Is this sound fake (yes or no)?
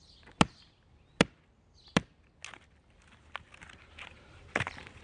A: no